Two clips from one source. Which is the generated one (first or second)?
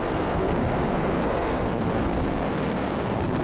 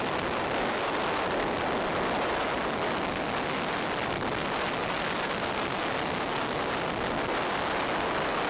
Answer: first